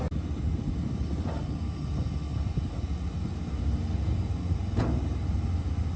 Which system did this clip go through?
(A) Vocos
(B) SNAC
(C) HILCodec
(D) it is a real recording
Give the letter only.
D